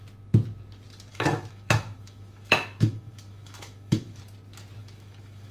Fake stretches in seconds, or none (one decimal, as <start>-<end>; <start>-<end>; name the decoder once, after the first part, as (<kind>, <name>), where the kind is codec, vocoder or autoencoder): 1.1-4.2 (autoencoder, DAC-VAE); 4.8-5.5